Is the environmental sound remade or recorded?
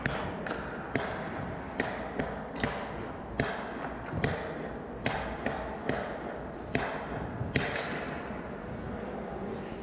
recorded